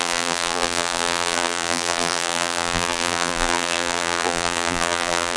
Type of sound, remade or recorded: remade